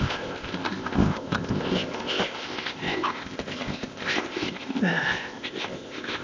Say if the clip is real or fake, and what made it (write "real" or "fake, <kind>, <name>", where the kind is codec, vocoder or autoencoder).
fake, codec, ZipCodec